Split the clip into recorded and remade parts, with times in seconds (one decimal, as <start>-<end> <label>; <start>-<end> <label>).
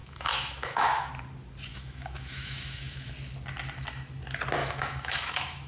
0.0-1.1 remade; 1.1-1.7 recorded; 1.7-3.1 remade; 3.1-4.6 recorded; 4.6-5.7 remade